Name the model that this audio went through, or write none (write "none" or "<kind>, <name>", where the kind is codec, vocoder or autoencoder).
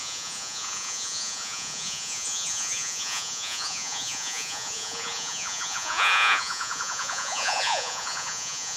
vocoder, Vocos